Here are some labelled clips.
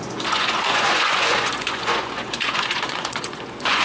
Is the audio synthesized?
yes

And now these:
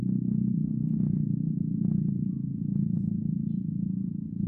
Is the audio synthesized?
yes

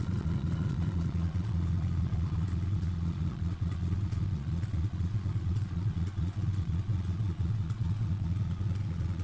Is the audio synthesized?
yes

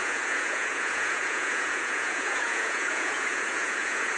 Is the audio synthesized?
yes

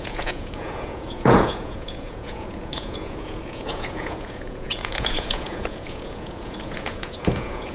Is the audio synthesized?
yes